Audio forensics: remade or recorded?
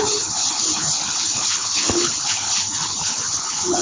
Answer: remade